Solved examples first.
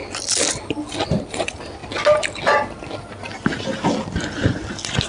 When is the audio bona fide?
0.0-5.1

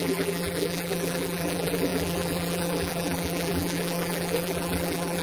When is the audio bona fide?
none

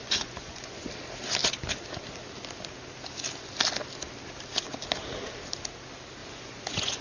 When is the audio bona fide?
0.9-6.2

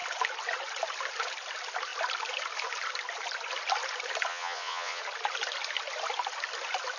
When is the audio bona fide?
0.0-4.3; 5.0-7.0

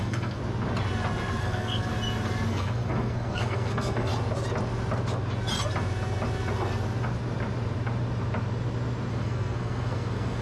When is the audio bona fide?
0.4-1.4; 1.9-2.5; 4.1-9.1

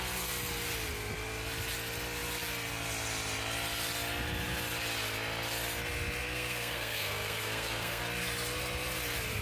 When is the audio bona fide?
0.0-6.2; 8.0-9.4

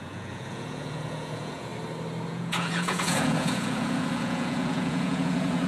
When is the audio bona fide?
1.7-2.3

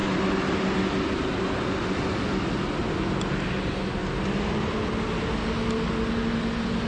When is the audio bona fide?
0.0-6.9